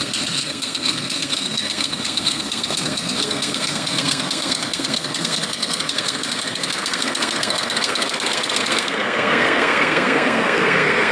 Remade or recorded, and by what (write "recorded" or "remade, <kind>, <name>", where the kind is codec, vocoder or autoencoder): remade, codec, SNAC